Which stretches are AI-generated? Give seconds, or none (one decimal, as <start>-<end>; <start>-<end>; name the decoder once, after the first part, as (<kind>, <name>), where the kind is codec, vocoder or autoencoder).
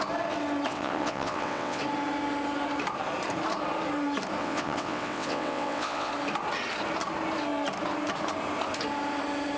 0.7-1.8 (vocoder, WaveNeXt); 4.4-6.1